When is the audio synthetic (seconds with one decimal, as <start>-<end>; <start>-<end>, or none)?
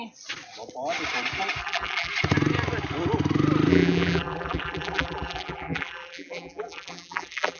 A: 1.6-2.1; 3.7-7.6